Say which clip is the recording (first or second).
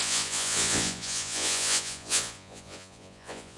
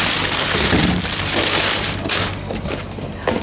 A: second